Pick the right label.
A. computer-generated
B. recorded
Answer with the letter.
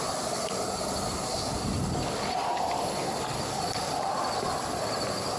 B